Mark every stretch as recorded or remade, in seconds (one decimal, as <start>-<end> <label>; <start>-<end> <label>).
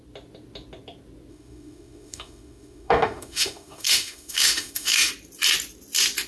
0.0-1.3 recorded; 1.3-5.1 remade; 5.1-6.3 recorded